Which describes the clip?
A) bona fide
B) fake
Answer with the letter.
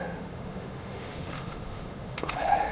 B